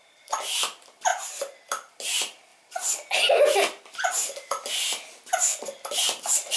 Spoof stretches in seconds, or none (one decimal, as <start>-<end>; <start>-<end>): none